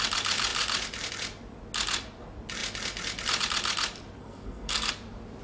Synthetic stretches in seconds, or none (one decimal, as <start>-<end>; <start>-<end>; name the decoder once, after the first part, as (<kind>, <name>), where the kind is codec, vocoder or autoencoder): 4.2-4.9 (codec, SNAC)